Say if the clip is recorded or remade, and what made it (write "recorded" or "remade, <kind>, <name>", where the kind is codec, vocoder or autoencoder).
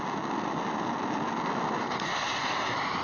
recorded